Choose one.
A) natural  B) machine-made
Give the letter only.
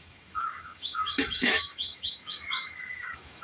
B